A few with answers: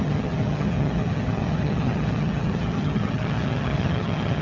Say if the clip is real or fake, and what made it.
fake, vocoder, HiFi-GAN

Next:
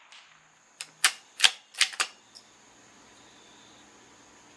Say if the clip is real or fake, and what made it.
real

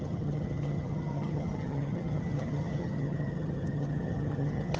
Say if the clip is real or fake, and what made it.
fake, vocoder, HiFi-GAN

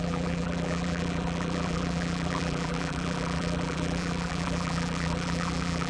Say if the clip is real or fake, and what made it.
fake, vocoder, BigVGAN v2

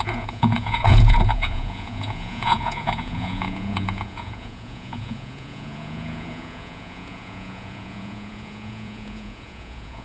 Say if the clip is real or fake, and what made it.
fake, vocoder, Vocos